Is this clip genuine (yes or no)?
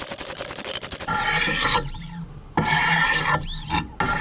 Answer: yes